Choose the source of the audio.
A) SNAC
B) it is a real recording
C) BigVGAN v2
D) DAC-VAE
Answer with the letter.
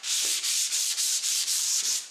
C